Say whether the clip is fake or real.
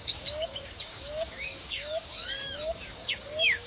fake